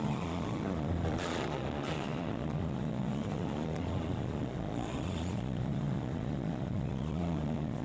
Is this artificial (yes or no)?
yes